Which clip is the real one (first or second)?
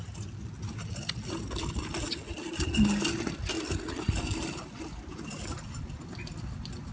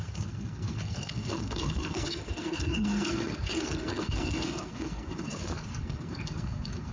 first